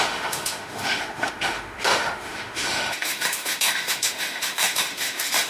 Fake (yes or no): yes